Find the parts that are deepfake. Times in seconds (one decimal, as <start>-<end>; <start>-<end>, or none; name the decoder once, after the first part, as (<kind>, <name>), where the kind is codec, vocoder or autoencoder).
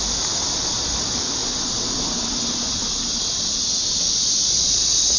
none